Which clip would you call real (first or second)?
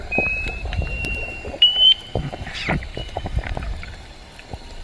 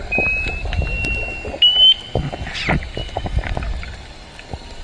second